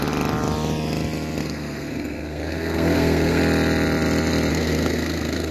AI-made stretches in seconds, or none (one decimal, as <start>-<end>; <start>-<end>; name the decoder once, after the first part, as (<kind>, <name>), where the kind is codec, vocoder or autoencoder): 1.4-3.4 (codec, SNAC); 4.5-5.5